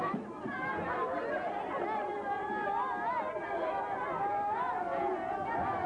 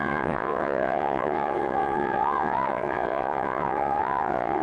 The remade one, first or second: second